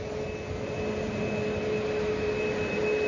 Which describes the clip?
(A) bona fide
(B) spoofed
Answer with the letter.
A